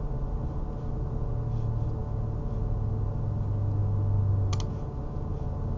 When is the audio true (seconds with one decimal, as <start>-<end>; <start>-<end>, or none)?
0.0-5.8

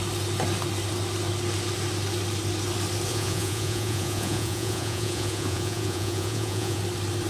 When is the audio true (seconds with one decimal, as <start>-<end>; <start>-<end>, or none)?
0.0-3.1; 6.8-7.3

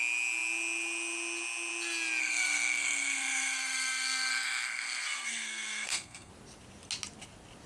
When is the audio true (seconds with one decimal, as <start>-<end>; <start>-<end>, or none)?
0.0-2.2; 6.3-7.7

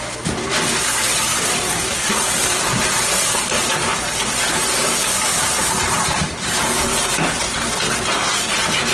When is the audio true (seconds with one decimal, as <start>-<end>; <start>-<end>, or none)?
0.0-1.3; 3.7-5.3; 6.3-8.9

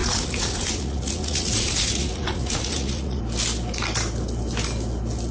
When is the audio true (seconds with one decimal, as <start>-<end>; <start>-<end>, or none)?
3.2-5.3